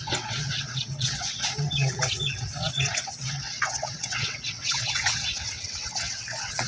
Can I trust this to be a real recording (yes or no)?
no